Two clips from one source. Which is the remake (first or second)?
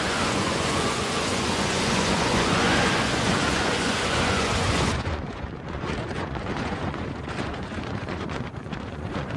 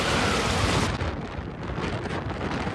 first